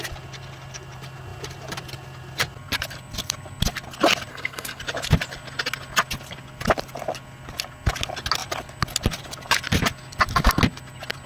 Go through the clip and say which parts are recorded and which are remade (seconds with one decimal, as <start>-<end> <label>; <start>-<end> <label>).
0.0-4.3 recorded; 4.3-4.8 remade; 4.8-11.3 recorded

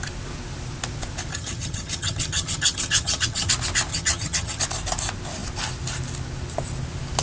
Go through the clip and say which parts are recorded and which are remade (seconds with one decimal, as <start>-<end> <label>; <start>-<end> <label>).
0.0-1.3 recorded; 1.3-3.5 remade; 3.5-3.9 recorded; 3.9-4.6 remade; 4.6-7.2 recorded

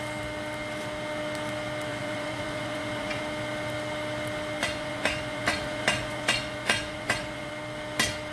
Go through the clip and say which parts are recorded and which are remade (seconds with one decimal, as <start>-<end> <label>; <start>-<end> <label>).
0.0-1.9 recorded; 1.9-3.2 remade; 3.2-4.6 recorded; 4.6-7.5 remade; 7.5-8.3 recorded

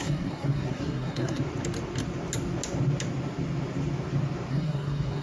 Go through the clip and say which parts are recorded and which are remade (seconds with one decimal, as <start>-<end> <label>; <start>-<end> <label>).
0.0-1.4 remade; 1.4-4.5 recorded; 4.5-5.2 remade

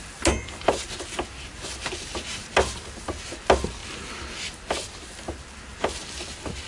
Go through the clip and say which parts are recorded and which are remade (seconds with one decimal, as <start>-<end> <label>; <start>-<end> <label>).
0.0-6.7 recorded